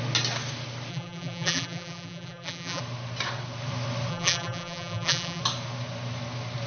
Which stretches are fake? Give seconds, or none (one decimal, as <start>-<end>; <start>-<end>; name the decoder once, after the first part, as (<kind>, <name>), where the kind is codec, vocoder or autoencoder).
0.9-2.8 (vocoder, BigVGAN v2); 4.1-5.4